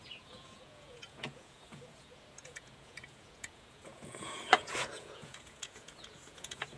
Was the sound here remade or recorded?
remade